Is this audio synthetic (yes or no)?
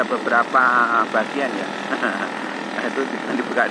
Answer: no